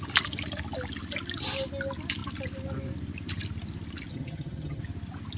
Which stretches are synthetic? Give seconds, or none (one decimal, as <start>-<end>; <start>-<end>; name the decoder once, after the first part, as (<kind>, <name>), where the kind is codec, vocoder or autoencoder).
4.1-4.8 (vocoder, HiFi-GAN)